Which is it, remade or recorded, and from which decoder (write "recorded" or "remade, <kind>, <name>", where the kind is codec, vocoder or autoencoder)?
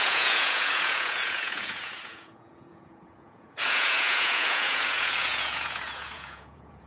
remade, vocoder, Vocos